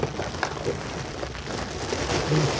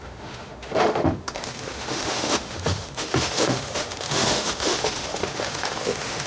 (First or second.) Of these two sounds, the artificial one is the second